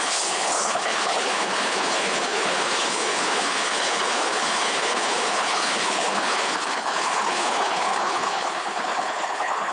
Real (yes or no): no